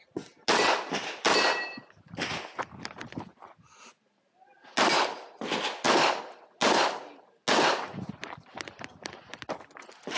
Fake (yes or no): no